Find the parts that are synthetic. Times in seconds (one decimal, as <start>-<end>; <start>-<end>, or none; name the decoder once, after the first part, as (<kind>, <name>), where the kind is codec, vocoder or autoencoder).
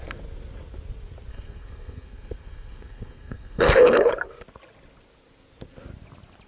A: 1.3-4.1 (codec, SNAC)